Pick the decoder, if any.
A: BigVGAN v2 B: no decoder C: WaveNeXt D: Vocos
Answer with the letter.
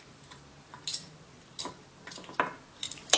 B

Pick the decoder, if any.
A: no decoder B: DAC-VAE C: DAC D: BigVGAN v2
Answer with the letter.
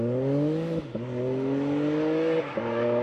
C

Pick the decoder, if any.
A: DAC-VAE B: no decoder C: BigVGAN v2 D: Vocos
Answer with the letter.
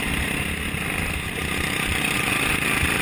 B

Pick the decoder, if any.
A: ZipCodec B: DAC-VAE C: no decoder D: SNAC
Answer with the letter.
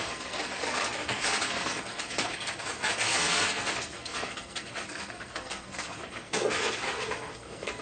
D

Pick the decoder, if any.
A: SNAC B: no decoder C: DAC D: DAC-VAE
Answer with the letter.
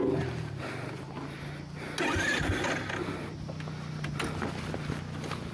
B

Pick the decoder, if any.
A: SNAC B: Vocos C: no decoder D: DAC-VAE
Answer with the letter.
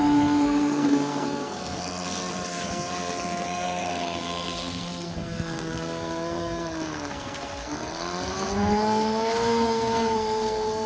A